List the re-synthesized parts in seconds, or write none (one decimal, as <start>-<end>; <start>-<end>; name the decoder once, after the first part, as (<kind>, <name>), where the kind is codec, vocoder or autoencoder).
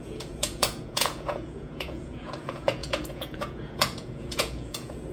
0.0-5.1 (vocoder, Vocos)